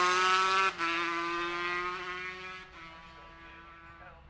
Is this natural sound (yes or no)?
yes